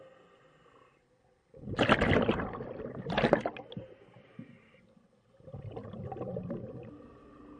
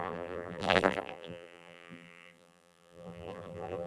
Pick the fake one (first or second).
second